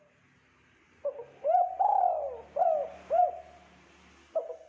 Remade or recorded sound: recorded